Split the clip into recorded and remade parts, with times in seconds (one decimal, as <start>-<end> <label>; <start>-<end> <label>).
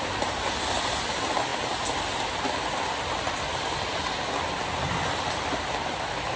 0.0-6.4 recorded